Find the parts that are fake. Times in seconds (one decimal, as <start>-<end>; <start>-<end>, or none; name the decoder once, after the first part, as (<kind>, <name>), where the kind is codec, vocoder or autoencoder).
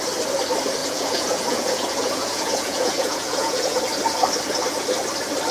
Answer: 0.8-3.8 (vocoder, Vocos)